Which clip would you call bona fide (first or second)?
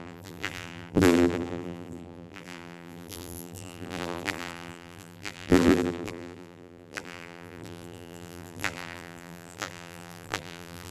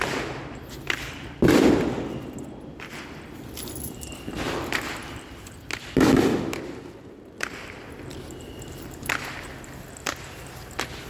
second